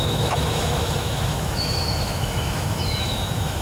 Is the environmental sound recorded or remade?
remade